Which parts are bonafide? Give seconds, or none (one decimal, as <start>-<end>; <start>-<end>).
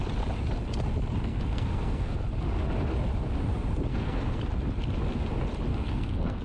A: 0.0-1.2; 2.2-3.9; 4.4-5.7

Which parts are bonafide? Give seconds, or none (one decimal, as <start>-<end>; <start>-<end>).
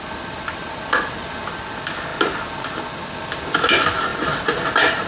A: 0.0-4.1